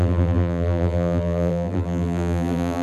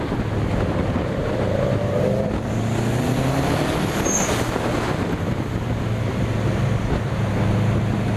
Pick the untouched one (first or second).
second